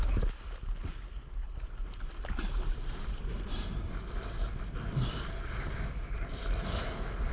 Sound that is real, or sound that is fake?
real